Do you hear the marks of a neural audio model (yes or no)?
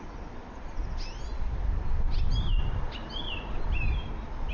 no